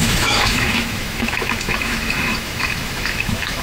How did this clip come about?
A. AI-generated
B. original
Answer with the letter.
A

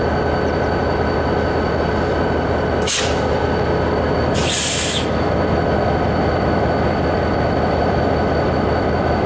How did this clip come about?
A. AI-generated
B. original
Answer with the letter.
B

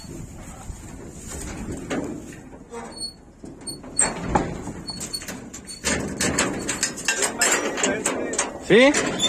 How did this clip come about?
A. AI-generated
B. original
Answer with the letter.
B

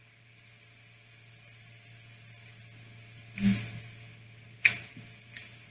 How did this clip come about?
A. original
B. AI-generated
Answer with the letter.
A